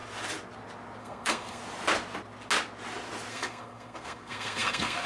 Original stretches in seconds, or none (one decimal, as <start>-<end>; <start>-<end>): 0.0-1.0; 1.6-3.3